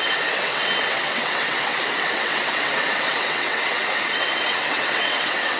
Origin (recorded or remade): remade